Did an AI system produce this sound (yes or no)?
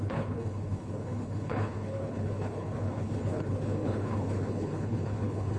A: yes